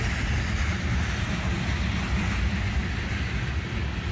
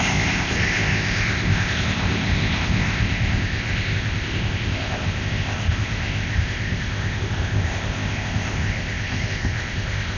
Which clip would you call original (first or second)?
first